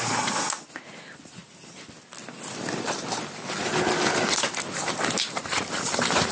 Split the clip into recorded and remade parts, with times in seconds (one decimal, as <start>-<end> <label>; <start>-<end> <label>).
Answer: 0.0-6.3 recorded